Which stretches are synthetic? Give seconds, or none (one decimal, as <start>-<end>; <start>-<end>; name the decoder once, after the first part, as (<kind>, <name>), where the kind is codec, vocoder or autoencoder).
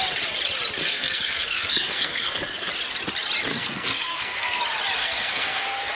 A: 0.8-2.7 (codec, SNAC); 3.5-4.6; 5.0-5.9